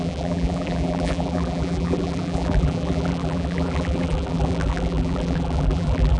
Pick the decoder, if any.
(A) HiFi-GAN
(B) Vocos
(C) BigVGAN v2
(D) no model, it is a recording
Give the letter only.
C